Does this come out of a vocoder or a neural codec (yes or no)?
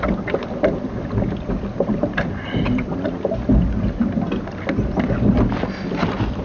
no